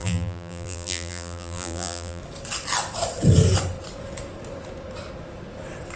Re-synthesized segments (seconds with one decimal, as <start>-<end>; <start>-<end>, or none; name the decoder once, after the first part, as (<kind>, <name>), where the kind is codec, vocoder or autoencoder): 0.0-2.2 (vocoder, BigVGAN v2)